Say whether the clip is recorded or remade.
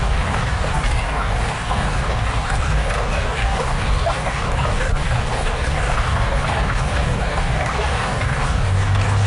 remade